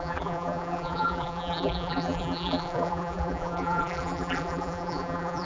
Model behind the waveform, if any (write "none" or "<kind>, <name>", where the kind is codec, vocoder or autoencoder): vocoder, BigVGAN v2